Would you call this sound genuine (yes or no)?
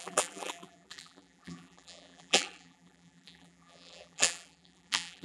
no